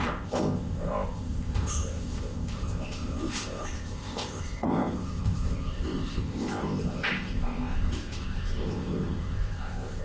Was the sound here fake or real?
fake